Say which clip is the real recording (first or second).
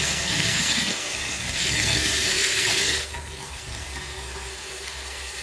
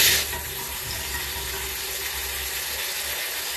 second